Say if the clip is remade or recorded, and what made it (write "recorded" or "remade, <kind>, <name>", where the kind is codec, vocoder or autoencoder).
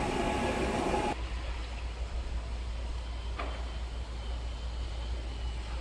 recorded